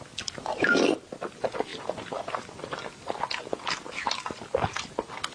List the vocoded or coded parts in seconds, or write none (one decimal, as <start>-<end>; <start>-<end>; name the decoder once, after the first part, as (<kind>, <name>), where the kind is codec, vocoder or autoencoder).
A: none